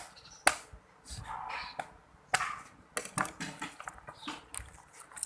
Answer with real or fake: real